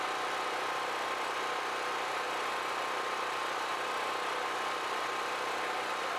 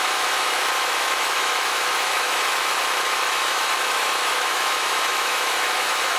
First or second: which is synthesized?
second